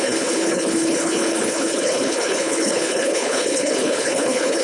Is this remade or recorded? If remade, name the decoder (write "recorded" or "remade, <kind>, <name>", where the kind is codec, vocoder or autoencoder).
remade, codec, HILCodec